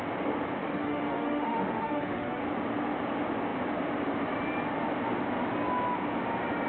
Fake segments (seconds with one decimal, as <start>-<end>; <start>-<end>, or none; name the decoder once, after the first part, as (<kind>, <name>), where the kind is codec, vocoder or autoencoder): 0.6-2.4 (autoencoder, DAC-VAE)